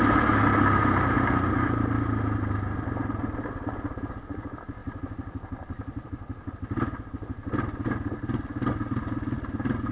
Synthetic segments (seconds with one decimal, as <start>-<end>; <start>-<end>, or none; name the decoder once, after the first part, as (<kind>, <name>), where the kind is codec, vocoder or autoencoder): 4.8-6.5 (vocoder, BigVGAN v2)